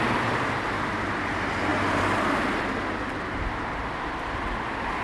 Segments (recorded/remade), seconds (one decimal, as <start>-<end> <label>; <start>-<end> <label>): 0.0-5.0 recorded